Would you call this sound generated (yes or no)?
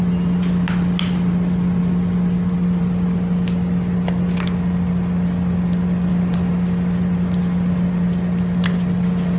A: no